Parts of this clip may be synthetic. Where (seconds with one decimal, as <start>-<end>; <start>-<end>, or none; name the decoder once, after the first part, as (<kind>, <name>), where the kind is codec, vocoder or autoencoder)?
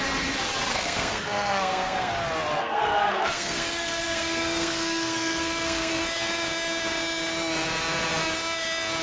0.7-2.1 (codec, SNAC); 2.6-5.9